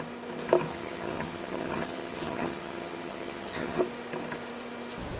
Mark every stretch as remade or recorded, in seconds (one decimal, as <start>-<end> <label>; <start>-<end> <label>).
0.0-0.7 recorded; 0.7-3.8 remade; 3.8-5.2 recorded